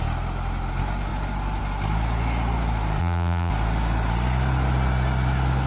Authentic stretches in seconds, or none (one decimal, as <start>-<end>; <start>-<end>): 0.0-3.0; 3.5-5.7